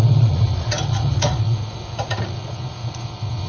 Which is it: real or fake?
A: fake